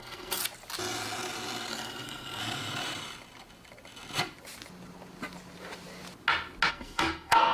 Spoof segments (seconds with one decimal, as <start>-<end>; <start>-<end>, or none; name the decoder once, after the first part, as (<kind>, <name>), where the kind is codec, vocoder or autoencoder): 0.0-0.4 (codec, SNAC); 1.7-2.4; 6.7-7.5